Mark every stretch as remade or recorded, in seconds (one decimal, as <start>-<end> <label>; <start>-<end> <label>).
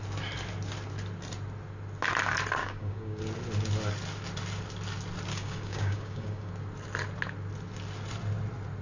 0.0-2.6 recorded; 2.6-3.2 remade; 3.2-5.3 recorded; 5.3-6.5 remade; 6.5-8.8 recorded